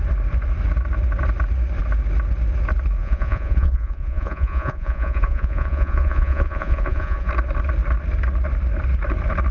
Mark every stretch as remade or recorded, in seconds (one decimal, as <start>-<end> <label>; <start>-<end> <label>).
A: 0.0-3.0 recorded; 3.0-7.3 remade; 7.3-9.5 recorded